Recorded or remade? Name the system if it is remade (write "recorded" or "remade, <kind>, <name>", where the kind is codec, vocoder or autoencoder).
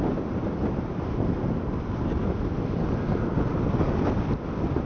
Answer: recorded